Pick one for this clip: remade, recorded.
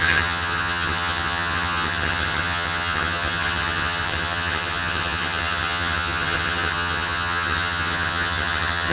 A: remade